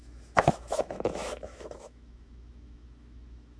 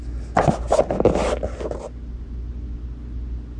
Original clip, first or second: second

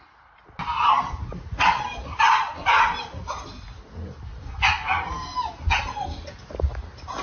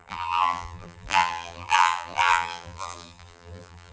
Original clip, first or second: first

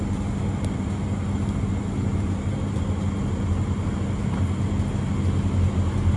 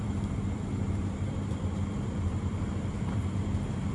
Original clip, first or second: first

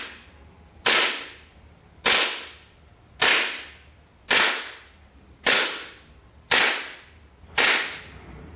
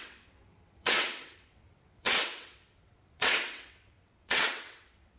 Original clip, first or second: first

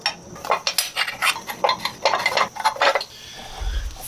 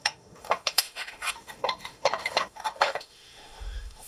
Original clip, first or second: first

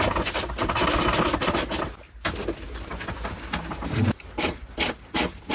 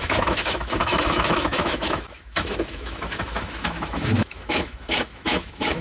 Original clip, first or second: first